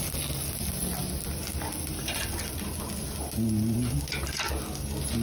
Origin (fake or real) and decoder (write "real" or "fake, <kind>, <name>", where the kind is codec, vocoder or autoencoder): real